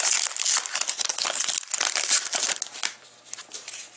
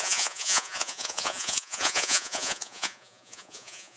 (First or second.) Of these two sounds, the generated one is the second